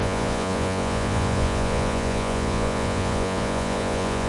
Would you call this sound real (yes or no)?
no